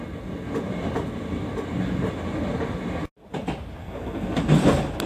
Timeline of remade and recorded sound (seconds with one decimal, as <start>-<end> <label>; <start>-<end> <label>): 0.0-3.8 recorded; 3.8-4.4 remade; 4.4-5.1 recorded